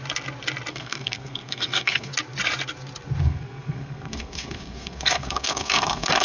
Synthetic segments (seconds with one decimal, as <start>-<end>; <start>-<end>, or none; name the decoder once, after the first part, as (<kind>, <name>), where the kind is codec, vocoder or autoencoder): 0.7-2.1 (codec, SNAC); 3.2-6.2